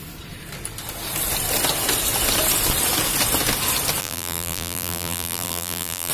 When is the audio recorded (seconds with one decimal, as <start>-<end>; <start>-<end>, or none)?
0.0-4.0